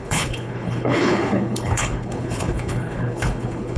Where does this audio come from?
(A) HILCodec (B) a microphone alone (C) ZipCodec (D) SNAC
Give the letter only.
A